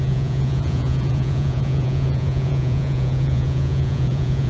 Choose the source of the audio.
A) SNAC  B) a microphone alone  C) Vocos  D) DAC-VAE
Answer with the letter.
C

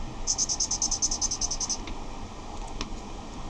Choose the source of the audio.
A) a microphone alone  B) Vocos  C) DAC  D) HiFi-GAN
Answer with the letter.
A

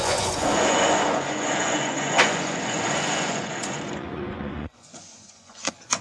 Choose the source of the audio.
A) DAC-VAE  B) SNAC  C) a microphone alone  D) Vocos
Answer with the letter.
D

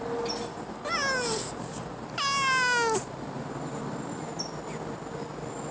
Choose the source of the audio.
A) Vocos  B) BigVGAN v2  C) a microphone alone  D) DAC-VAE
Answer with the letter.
C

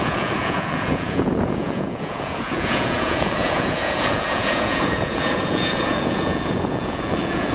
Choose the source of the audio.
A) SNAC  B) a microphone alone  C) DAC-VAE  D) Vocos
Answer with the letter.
D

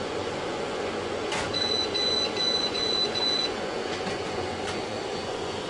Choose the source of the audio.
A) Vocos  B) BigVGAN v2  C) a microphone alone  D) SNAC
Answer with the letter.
A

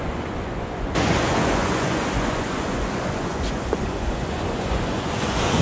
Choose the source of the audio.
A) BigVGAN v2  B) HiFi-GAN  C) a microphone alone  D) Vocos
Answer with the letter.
D